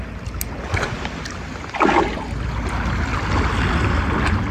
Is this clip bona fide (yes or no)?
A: yes